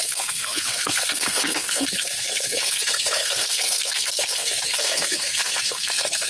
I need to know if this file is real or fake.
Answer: fake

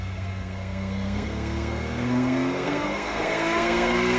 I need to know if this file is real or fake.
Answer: fake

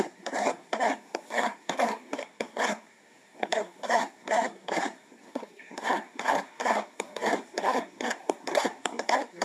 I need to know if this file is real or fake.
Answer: fake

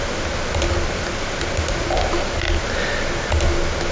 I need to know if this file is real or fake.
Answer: real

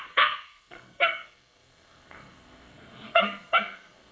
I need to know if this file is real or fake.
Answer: fake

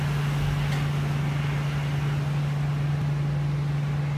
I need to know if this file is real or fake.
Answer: real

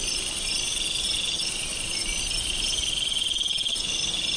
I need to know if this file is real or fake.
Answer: real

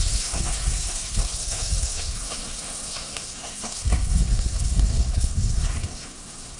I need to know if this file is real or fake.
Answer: fake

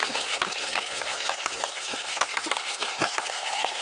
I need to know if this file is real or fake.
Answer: fake